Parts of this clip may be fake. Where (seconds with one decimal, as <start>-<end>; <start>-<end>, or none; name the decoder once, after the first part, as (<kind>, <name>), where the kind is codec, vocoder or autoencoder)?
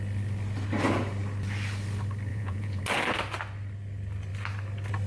2.3-2.8 (vocoder, Vocos)